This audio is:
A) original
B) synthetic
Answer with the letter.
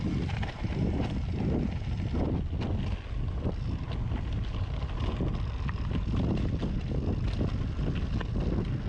A